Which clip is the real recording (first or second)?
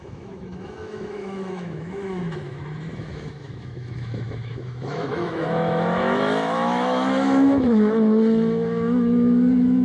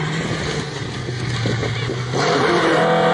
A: second